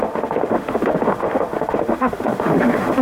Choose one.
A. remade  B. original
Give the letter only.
A